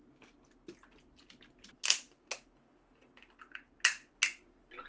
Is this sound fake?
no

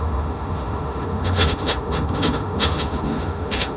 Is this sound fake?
yes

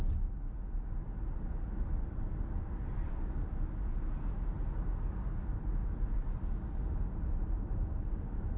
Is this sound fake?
no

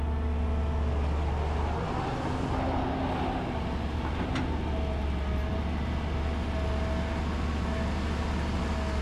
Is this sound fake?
no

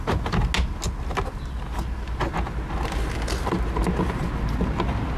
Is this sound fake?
no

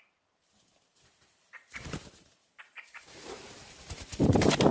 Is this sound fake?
yes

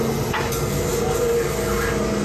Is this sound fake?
no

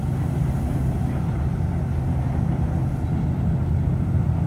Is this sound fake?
no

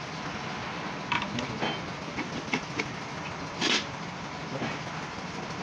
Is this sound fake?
no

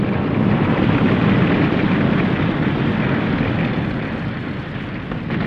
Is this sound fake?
yes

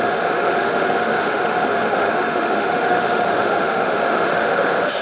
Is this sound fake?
yes